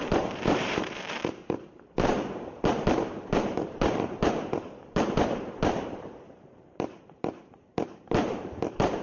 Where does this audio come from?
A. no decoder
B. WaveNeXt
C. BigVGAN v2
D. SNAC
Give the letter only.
C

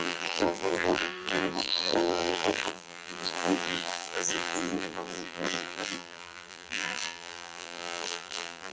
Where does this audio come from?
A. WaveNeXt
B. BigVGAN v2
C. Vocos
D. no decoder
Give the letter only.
B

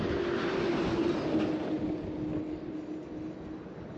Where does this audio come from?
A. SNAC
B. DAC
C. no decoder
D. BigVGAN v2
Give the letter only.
C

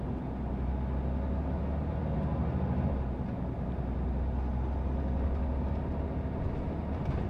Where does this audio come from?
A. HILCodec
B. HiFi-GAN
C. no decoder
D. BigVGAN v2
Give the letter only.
C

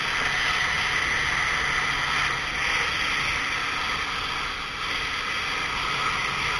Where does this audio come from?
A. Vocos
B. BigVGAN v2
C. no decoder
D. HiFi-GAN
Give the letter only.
C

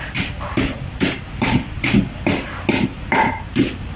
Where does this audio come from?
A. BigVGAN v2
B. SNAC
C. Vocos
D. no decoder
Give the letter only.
D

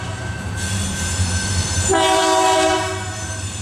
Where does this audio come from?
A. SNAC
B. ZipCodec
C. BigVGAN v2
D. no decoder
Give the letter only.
C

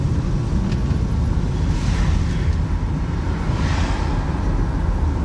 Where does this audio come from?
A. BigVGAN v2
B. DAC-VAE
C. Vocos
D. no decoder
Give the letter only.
D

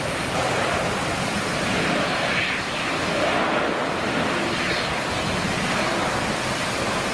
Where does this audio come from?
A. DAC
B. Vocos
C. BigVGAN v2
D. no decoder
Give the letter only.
D